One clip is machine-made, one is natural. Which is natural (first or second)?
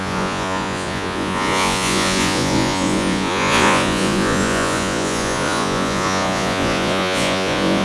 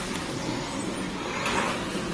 second